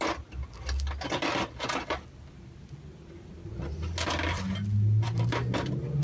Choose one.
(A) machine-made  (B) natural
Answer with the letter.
B